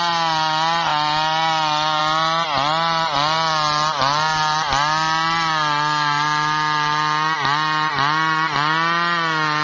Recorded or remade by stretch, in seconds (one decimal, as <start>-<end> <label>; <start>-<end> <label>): 0.0-9.6 recorded

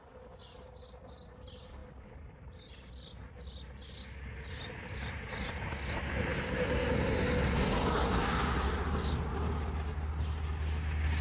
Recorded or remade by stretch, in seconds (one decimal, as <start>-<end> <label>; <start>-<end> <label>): 0.0-11.2 recorded

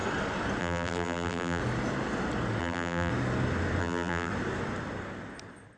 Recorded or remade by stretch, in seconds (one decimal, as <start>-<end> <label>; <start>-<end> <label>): 0.0-0.6 recorded; 0.6-1.6 remade; 1.6-2.6 recorded; 2.6-3.1 remade; 3.1-3.8 recorded; 3.8-4.3 remade; 4.3-5.8 recorded

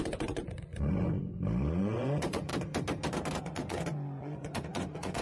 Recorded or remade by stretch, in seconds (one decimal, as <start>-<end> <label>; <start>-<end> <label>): 0.0-1.2 remade; 1.2-1.8 recorded; 1.8-2.5 remade; 2.5-3.4 recorded; 3.4-5.2 remade

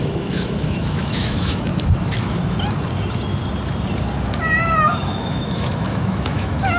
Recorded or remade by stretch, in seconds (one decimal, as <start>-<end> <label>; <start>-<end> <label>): 0.0-1.7 remade; 1.7-4.4 recorded; 4.4-6.8 remade

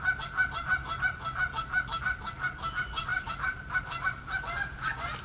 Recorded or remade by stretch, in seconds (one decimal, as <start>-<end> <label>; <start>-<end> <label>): 0.0-5.2 recorded